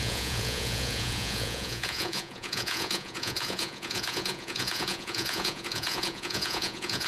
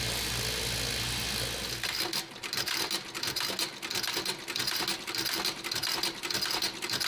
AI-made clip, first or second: first